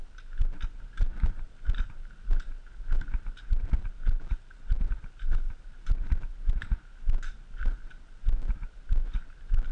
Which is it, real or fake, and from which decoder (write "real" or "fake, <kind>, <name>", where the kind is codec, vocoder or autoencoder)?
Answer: real